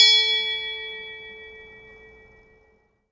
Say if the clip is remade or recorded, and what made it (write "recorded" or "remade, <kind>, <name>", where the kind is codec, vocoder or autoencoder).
recorded